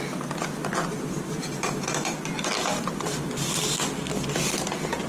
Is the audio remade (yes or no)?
no